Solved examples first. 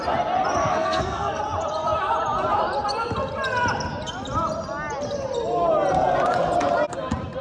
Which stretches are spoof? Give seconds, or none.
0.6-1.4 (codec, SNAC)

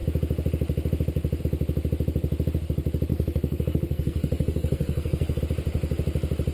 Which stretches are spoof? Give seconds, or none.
3.1-5.4 (codec, SNAC)